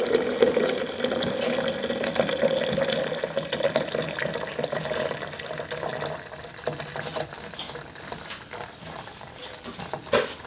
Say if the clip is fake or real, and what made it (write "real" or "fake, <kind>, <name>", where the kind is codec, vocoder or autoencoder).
real